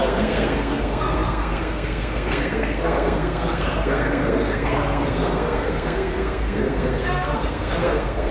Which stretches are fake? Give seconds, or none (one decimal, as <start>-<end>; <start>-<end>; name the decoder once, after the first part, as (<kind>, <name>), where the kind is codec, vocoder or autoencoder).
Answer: 0.0-8.3 (codec, SNAC)